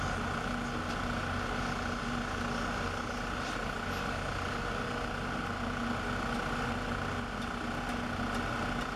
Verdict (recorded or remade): recorded